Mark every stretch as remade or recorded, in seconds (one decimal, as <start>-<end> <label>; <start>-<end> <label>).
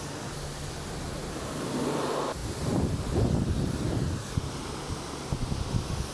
0.0-6.1 remade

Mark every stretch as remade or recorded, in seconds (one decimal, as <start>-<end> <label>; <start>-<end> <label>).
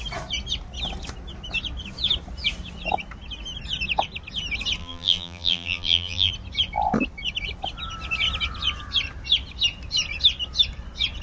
0.0-4.8 recorded; 4.8-6.3 remade; 6.3-11.2 recorded